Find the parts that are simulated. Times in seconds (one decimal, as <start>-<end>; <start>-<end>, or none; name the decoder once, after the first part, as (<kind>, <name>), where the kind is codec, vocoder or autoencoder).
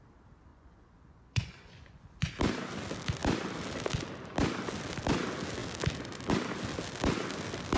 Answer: 0.5-2.3 (vocoder, Vocos)